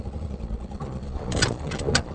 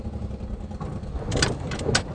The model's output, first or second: first